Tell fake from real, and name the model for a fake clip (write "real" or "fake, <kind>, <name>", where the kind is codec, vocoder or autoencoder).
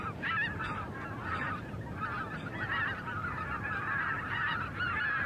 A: real